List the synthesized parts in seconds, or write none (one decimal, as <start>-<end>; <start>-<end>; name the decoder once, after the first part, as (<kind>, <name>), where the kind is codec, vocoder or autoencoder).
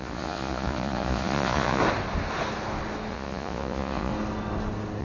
0.0-1.8 (vocoder, Vocos); 3.1-4.1